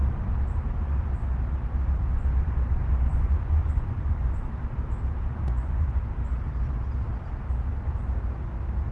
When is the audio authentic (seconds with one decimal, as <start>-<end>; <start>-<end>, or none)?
0.0-3.1; 4.5-5.4; 6.0-8.9